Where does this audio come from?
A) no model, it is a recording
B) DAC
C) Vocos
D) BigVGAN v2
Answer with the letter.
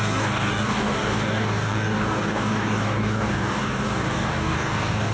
B